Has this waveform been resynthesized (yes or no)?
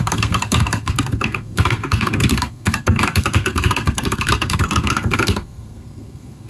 yes